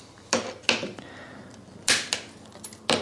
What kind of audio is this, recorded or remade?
recorded